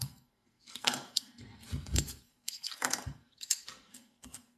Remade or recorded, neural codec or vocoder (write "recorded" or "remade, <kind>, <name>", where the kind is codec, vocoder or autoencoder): remade, codec, SNAC